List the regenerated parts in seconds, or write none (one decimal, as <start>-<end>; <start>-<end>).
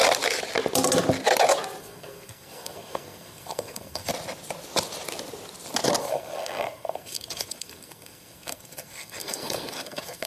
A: 1.8-4.1; 6.0-10.3